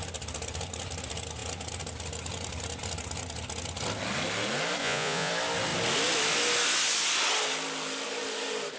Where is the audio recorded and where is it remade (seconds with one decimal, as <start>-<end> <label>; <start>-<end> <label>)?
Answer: 0.0-4.8 recorded; 4.8-5.3 remade; 5.3-8.8 recorded